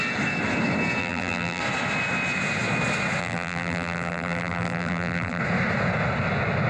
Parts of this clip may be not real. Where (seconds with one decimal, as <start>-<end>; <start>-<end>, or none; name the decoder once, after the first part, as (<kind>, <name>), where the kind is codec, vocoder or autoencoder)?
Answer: 1.0-1.6 (vocoder, BigVGAN v2); 3.2-5.4